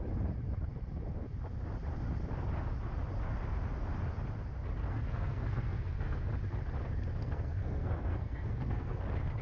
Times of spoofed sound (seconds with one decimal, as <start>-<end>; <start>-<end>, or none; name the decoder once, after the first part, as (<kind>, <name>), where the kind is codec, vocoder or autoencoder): 4.8-6.3 (codec, SNAC); 7.1-9.0